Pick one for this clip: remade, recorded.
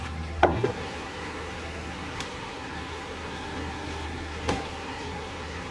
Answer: remade